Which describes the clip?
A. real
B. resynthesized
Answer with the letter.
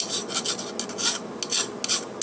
A